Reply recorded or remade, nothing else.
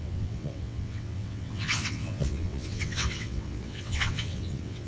remade